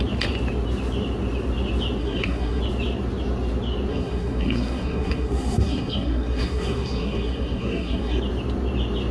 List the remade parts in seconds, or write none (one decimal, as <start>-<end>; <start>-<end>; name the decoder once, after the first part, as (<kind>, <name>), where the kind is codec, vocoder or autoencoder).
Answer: 2.0-2.6 (codec, SNAC); 3.9-8.2